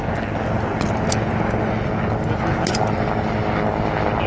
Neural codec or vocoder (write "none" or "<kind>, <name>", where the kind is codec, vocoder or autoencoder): none